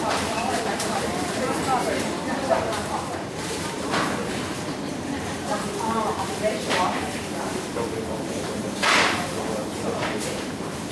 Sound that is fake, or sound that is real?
fake